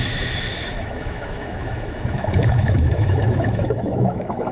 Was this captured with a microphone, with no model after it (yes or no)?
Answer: no